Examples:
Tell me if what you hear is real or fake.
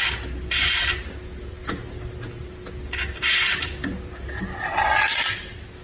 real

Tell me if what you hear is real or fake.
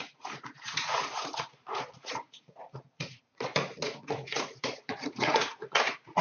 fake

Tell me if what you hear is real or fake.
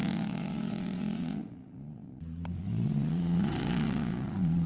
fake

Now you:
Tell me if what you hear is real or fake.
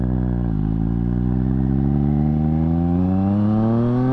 real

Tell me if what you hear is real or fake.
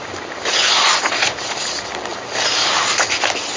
real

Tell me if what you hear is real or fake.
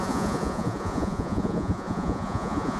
fake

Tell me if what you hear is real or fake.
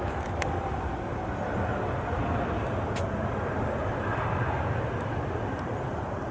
real